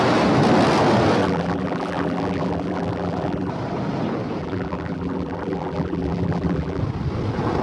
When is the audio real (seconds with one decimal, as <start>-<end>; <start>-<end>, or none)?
0.0-1.2; 3.5-4.4; 6.8-7.6